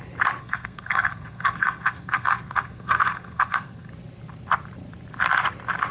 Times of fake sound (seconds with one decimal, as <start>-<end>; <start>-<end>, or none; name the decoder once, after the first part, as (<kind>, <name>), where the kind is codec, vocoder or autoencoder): 0.4-3.9 (codec, SNAC)